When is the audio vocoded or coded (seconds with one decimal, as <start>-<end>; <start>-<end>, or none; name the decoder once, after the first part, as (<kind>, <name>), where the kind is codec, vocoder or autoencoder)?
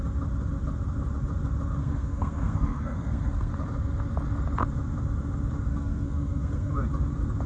1.8-3.5 (codec, SNAC); 5.7-6.7